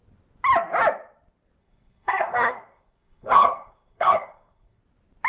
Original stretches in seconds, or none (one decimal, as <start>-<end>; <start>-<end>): 0.0-1.6; 4.8-5.3